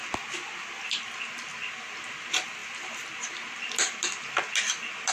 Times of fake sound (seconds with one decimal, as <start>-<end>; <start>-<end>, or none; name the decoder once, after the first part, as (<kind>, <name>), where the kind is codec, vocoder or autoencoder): none